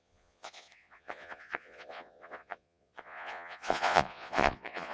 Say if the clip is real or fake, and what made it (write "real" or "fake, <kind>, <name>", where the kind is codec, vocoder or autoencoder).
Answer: fake, vocoder, Vocos